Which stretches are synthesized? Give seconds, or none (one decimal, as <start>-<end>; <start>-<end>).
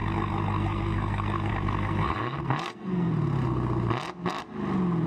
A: 0.0-3.1